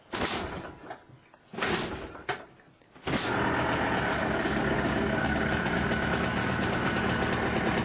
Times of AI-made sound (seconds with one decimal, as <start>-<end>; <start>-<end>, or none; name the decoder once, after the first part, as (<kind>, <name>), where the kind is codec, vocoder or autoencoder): 4.2-5.9 (codec, DAC); 6.4-7.0